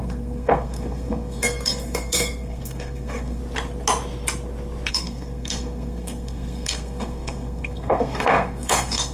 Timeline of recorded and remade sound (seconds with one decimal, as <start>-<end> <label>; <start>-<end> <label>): 0.0-3.4 remade; 3.4-4.9 recorded; 4.9-9.1 remade